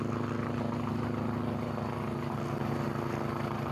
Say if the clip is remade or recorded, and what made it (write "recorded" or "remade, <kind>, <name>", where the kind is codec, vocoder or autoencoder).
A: recorded